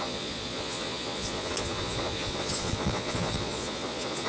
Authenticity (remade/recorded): remade